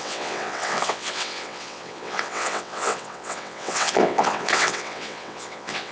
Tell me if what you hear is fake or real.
fake